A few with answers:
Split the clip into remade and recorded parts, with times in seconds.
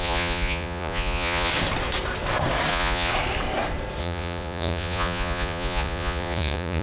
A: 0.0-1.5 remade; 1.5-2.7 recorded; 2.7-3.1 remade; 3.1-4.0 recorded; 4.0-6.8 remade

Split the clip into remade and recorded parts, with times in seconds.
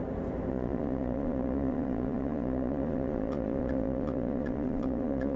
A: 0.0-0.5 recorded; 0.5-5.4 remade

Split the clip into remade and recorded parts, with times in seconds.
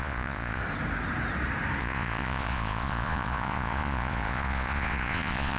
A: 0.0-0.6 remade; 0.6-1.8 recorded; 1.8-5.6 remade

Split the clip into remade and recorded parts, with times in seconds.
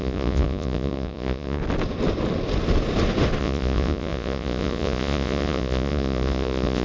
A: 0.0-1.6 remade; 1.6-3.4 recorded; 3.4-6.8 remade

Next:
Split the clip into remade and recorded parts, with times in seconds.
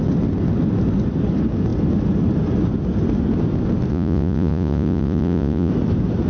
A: 0.0-3.9 recorded; 3.9-5.7 remade; 5.7-6.3 recorded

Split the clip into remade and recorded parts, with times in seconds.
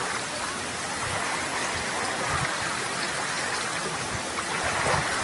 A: 0.0-5.2 recorded